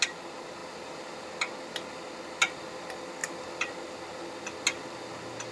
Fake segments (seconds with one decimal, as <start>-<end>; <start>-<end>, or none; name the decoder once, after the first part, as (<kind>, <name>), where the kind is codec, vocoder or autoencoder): none